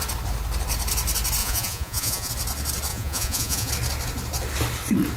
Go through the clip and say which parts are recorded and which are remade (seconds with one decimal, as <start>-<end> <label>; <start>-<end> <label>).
0.0-1.4 recorded; 1.4-2.3 remade; 2.3-2.9 recorded; 2.9-3.7 remade; 3.7-5.2 recorded